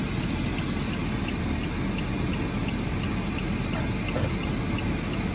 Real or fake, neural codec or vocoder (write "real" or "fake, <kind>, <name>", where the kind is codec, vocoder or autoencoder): real